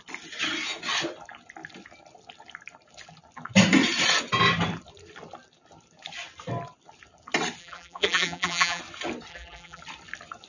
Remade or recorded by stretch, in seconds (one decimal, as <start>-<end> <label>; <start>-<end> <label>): 0.0-7.6 recorded; 7.6-8.8 remade; 8.8-9.3 recorded; 9.3-9.8 remade; 9.8-10.5 recorded